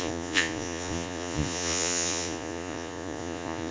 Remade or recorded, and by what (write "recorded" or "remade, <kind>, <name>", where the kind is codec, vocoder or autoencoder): remade, vocoder, Vocos